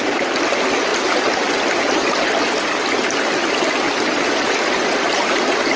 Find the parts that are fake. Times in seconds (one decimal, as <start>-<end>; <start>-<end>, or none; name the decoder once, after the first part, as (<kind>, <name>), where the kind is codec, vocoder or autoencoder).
none